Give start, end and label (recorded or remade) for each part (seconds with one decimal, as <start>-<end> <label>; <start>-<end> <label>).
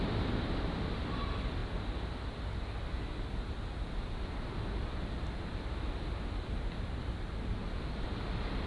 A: 0.0-8.7 recorded